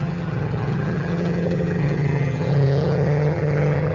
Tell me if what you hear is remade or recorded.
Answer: remade